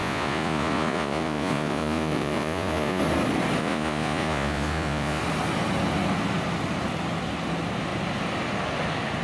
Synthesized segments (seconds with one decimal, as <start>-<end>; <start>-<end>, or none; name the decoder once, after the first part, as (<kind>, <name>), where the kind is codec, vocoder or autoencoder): 0.0-3.0 (vocoder, Vocos); 3.6-5.2